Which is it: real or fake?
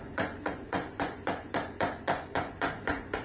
fake